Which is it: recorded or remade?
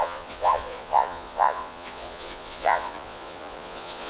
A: remade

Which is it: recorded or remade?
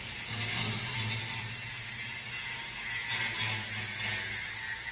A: recorded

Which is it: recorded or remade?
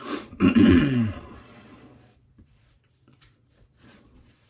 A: remade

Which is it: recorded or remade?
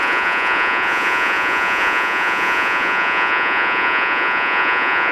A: remade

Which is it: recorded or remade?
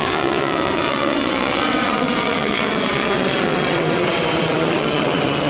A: remade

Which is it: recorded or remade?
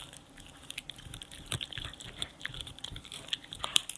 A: remade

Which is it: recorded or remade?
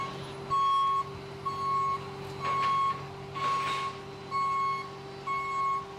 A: recorded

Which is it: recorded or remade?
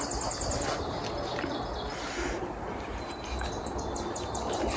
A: recorded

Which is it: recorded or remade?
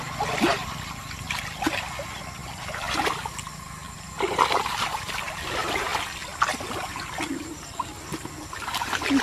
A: recorded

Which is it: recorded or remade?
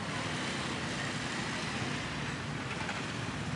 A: recorded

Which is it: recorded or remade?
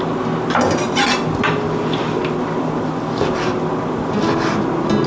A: recorded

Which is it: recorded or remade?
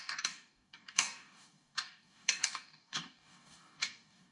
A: remade